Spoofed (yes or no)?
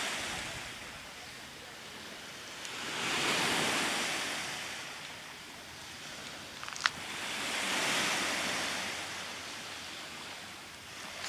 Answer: no